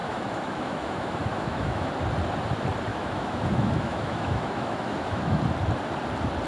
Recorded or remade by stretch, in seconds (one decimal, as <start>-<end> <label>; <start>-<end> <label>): 0.0-1.9 remade; 1.9-2.9 recorded; 2.9-5.4 remade; 5.4-6.5 recorded